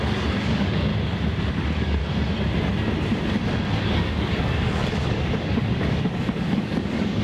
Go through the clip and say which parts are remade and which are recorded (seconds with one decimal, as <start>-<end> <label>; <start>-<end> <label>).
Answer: 0.0-0.9 remade; 0.9-1.5 recorded; 1.5-2.0 remade; 2.0-3.8 recorded; 3.8-7.2 remade